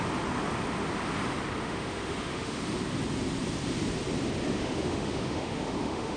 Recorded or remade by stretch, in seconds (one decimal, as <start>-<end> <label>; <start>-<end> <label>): 0.0-1.6 recorded; 1.6-2.6 remade; 2.6-4.5 recorded; 4.5-6.2 remade